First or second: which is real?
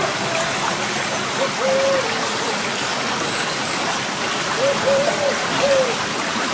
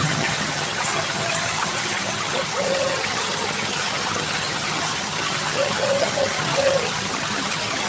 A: first